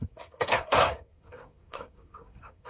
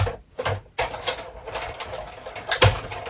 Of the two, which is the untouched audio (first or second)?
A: second